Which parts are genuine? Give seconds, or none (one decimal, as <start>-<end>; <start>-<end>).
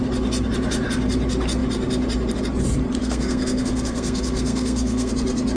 0.0-3.0; 5.1-5.6